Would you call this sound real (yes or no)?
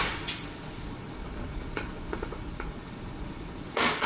no